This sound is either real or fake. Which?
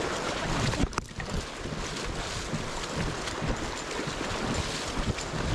real